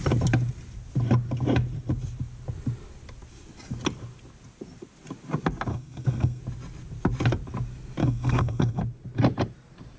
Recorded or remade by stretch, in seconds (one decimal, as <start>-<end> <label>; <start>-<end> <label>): 0.0-5.7 recorded; 5.7-6.4 remade; 6.4-8.0 recorded; 8.0-8.8 remade; 8.8-10.0 recorded